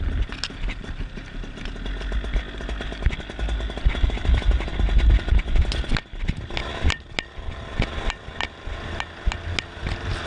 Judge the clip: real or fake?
real